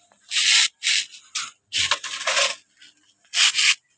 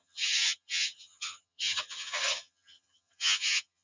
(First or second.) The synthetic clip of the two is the second